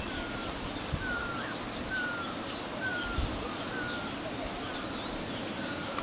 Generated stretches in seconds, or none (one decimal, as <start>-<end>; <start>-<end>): 0.4-1.4; 2.9-3.6